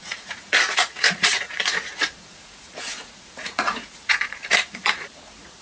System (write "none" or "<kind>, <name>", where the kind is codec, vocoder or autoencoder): vocoder, Vocos